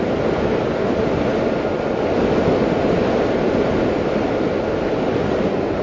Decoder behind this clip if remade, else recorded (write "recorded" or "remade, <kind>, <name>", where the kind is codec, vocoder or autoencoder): recorded